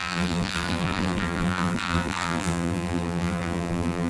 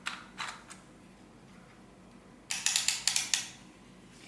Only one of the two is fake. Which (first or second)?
first